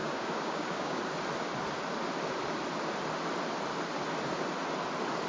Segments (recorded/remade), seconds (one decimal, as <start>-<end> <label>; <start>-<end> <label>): 0.0-1.0 remade; 1.0-5.3 recorded